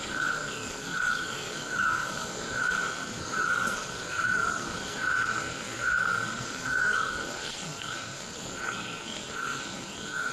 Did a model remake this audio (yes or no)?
yes